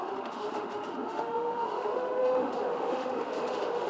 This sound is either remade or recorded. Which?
remade